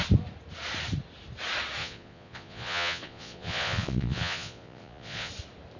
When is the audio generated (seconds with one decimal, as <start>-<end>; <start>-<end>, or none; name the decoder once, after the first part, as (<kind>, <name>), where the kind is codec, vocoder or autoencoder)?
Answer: 1.8-5.3 (vocoder, Vocos)

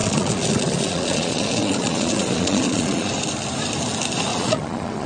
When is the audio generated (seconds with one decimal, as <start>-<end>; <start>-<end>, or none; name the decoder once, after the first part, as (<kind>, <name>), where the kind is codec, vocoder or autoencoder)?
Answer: 0.0-3.1 (vocoder, Vocos); 4.3-5.1

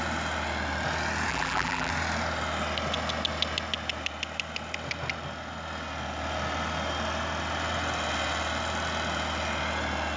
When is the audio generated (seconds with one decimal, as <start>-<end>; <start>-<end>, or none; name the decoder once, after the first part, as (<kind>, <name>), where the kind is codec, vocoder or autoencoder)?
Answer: 1.3-1.9 (vocoder, BigVGAN v2)

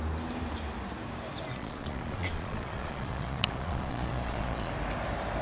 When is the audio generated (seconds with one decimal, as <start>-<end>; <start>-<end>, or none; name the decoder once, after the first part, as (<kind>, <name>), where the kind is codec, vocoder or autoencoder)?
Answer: 1.5-4.7 (vocoder, Vocos)

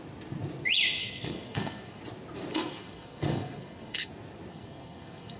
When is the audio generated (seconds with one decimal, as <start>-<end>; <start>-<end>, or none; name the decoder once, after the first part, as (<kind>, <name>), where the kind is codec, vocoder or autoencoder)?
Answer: 1.0-2.0 (codec, SNAC); 2.5-4.1; 4.5-5.4

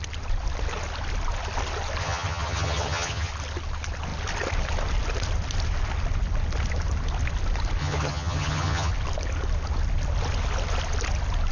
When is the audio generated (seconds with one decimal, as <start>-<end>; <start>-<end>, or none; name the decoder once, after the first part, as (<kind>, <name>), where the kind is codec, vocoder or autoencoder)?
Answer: 2.0-3.3 (vocoder, HiFi-GAN); 7.8-8.9